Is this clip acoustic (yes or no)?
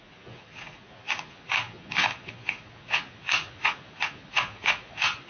no